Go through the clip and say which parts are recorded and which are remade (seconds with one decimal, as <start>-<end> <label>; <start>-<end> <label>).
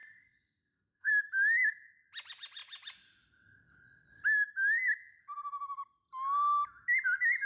0.0-1.1 remade; 1.1-7.5 recorded